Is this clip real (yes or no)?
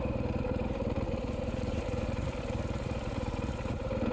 no